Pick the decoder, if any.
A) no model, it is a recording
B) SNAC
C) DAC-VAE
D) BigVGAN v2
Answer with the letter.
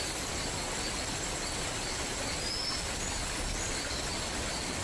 A